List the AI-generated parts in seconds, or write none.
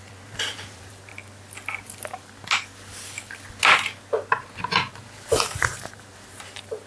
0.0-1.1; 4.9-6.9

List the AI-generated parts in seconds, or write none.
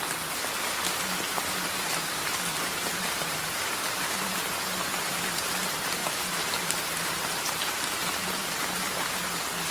0.0-9.7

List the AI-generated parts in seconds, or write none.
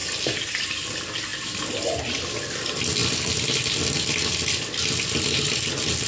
0.0-0.5; 1.3-2.0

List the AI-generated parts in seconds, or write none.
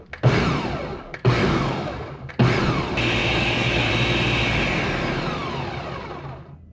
0.9-2.3; 3.2-3.9